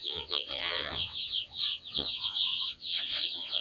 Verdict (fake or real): fake